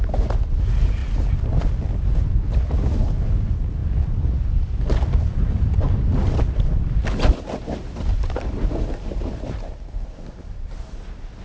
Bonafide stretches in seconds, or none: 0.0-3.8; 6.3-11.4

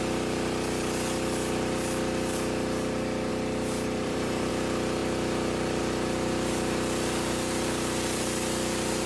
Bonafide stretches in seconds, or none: 0.0-3.3; 4.5-9.1

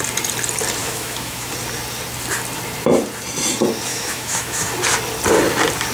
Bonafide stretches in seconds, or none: 0.0-0.8; 1.5-3.9; 4.7-5.9

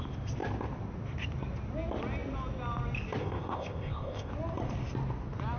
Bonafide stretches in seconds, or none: 0.0-3.2; 4.3-5.6